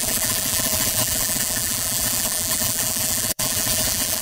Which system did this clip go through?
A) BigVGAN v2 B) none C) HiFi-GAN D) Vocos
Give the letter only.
A